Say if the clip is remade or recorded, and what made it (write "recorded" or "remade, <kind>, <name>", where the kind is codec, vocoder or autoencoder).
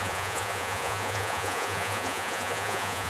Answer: remade, vocoder, Vocos